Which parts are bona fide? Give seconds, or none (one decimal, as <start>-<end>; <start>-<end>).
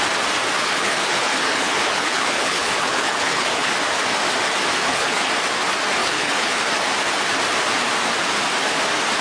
0.0-0.6; 3.7-4.8; 5.3-6.0; 6.7-9.2